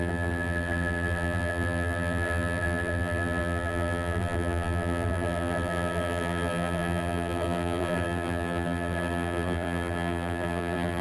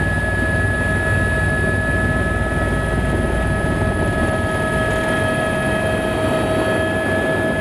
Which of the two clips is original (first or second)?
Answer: second